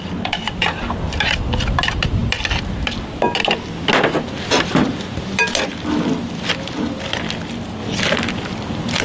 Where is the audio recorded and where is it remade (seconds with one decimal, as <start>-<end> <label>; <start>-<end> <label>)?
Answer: 0.0-9.0 recorded